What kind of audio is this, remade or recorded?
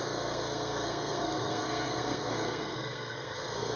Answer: remade